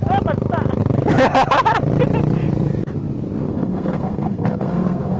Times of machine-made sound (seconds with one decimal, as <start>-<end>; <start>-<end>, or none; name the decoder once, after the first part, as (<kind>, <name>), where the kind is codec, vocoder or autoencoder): 3.5-5.2 (codec, SNAC)